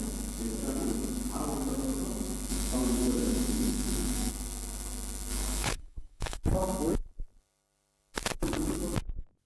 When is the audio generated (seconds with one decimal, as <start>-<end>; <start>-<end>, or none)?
2.5-4.3; 5.3-6.4